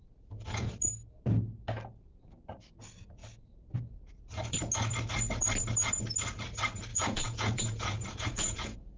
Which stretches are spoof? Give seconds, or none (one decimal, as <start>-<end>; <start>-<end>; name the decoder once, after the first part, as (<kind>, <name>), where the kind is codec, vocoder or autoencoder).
0.0-0.7 (vocoder, Vocos); 6.9-9.0